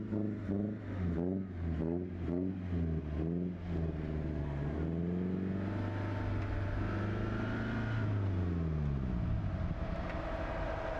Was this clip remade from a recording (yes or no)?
no